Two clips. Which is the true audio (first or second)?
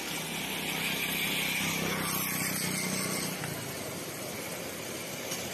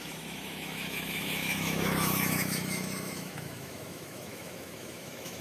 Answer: first